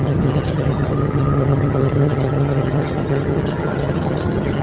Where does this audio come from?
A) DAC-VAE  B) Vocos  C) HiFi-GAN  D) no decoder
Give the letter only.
C